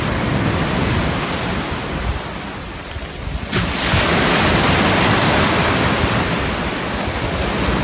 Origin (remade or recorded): recorded